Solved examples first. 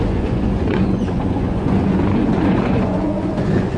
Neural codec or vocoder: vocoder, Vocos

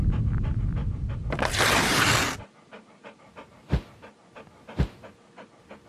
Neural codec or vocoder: none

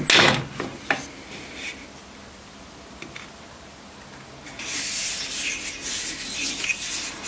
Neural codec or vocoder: none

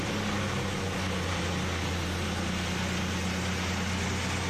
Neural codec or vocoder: none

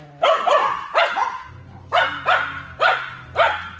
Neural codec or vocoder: none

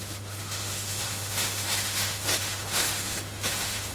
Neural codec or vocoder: autoencoder, DAC-VAE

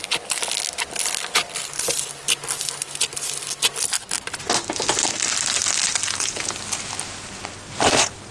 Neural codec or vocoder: none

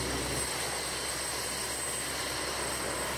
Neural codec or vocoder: none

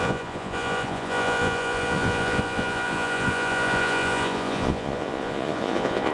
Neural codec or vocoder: vocoder, Vocos